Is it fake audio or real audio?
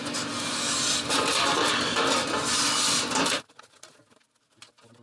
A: real